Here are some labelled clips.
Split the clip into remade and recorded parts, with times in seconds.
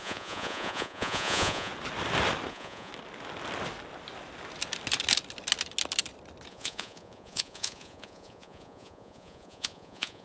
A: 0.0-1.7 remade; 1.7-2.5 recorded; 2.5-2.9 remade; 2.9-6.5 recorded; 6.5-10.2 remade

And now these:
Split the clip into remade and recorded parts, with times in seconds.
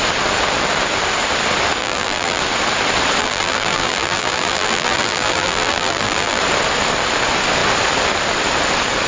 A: 0.0-1.8 recorded; 1.8-2.4 remade; 2.4-3.2 recorded; 3.2-6.4 remade; 6.4-9.1 recorded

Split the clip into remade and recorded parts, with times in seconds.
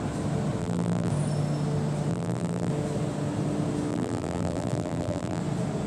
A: 0.0-0.6 recorded; 0.6-1.1 remade; 1.1-2.1 recorded; 2.1-2.7 remade; 2.7-3.9 recorded; 3.9-5.4 remade; 5.4-5.9 recorded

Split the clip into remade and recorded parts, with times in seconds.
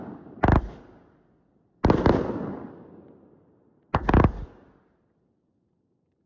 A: 0.0-6.3 recorded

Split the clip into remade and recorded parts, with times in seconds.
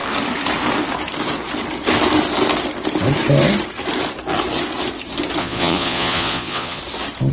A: 0.0-5.4 recorded; 5.4-6.8 remade; 6.8-7.3 recorded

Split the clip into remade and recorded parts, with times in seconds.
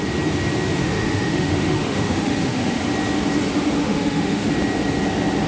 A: 0.0-0.8 recorded; 0.8-2.8 remade; 2.8-3.8 recorded; 3.8-4.5 remade; 4.5-5.5 recorded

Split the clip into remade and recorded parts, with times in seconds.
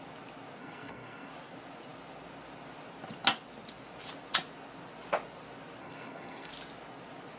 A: 0.0-0.6 recorded; 0.6-1.3 remade; 1.3-5.8 recorded; 5.8-6.5 remade; 6.5-7.4 recorded